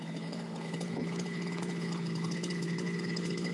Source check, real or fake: fake